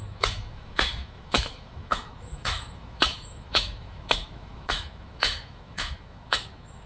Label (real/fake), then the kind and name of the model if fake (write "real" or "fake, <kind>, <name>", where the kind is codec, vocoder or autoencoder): fake, autoencoder, DAC-VAE